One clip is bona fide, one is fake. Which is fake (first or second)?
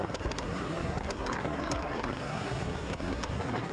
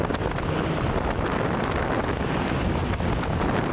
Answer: first